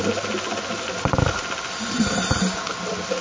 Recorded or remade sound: recorded